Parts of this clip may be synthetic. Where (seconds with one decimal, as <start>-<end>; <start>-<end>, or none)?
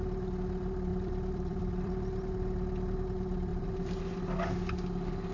0.9-1.9; 3.5-4.0